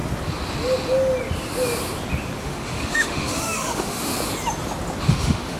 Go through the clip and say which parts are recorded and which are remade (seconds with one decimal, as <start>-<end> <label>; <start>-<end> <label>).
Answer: 0.0-2.4 recorded; 2.4-4.1 remade; 4.1-5.1 recorded; 5.1-5.6 remade